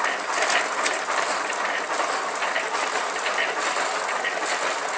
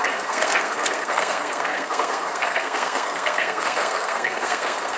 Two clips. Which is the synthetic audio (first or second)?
second